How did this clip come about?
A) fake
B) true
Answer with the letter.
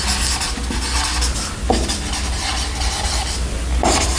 B